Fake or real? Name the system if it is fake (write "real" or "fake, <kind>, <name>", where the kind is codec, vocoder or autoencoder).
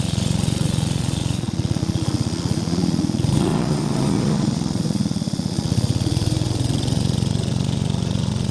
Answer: fake, vocoder, Vocos